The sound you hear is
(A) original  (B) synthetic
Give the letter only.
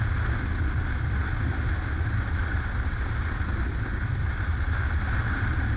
A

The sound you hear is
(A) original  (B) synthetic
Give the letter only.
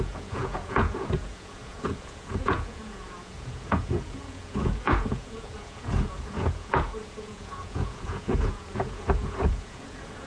B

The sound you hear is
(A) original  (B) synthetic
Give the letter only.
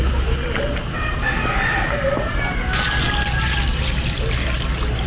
A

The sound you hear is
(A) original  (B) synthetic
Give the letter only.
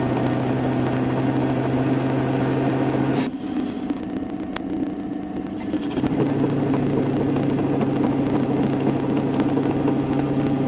A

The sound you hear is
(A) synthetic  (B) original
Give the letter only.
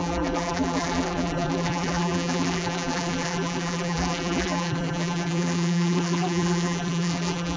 A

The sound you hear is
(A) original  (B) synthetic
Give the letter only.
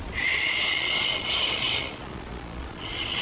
B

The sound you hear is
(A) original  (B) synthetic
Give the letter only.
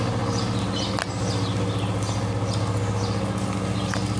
A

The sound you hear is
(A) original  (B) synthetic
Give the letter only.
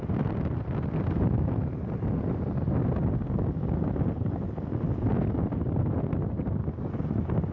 A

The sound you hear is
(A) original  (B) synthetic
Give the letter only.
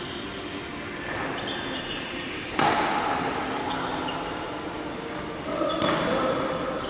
A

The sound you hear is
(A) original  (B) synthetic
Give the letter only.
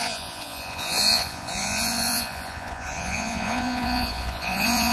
B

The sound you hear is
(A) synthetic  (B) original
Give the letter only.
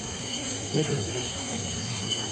A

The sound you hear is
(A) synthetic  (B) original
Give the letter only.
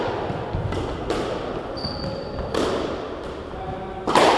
B